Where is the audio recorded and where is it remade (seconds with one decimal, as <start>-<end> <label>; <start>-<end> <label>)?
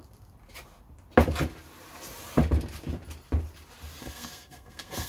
0.0-4.0 recorded; 4.0-5.1 remade